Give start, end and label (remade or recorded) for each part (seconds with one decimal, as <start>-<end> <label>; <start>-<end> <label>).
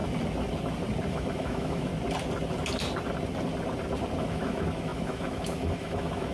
0.0-1.1 recorded; 1.1-1.9 remade; 1.9-4.2 recorded; 4.2-6.3 remade